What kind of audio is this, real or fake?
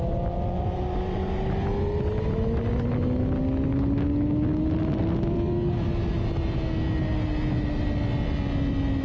real